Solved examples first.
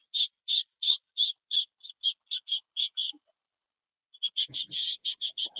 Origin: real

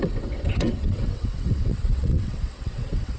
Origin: fake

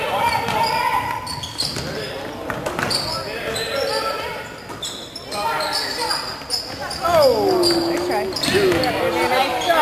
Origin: real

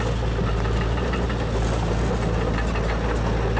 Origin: real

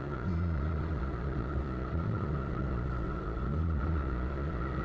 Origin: fake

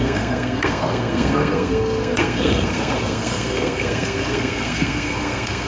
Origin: fake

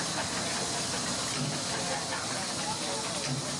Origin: real